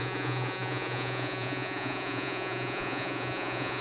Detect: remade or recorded remade